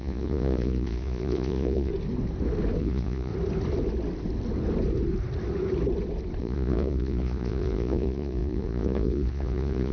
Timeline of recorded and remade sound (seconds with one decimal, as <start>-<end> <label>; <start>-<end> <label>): 0.0-1.9 remade; 1.9-2.8 recorded; 2.8-3.3 remade; 3.3-6.4 recorded; 6.4-9.9 remade